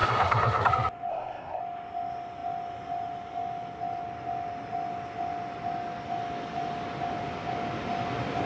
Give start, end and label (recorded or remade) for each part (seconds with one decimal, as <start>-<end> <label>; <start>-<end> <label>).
0.0-0.7 remade; 0.7-1.1 recorded; 1.1-1.6 remade; 1.6-8.5 recorded